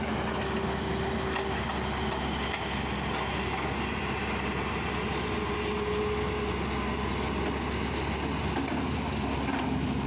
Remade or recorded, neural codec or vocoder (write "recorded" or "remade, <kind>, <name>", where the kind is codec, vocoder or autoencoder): recorded